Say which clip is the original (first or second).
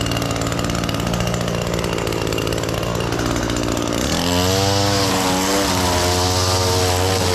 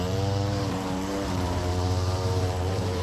first